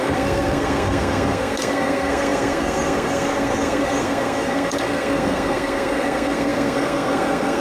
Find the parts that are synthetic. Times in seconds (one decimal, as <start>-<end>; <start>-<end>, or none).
0.0-7.6